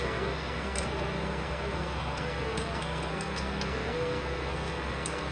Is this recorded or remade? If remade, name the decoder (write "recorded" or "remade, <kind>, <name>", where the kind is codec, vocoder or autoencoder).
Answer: remade, codec, SNAC